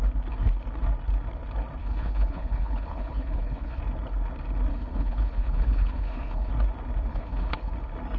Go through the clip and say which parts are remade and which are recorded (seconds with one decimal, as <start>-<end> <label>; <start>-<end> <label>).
0.0-1.8 recorded; 1.8-3.8 remade; 3.8-4.7 recorded; 4.7-6.5 remade; 6.5-7.1 recorded; 7.1-7.7 remade; 7.7-8.2 recorded